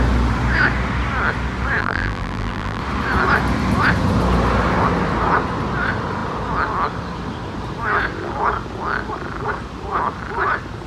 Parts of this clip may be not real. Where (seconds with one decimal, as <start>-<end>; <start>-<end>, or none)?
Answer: 1.8-2.8